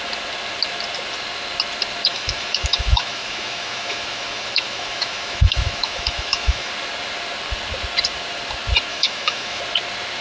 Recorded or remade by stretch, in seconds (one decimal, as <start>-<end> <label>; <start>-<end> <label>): 0.0-2.1 recorded; 2.1-6.7 remade; 6.7-8.9 recorded; 8.9-9.6 remade; 9.6-10.2 recorded